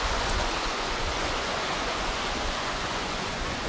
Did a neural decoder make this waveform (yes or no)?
yes